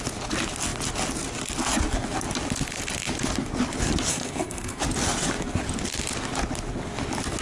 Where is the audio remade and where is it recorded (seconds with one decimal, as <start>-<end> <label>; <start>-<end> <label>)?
0.0-4.1 recorded; 4.1-4.8 remade; 4.8-7.4 recorded